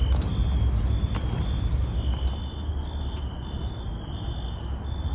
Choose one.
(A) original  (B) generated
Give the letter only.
A